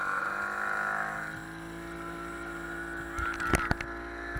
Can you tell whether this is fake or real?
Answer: real